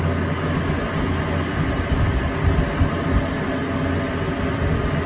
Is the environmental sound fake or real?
real